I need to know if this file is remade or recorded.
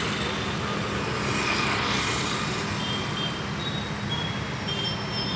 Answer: recorded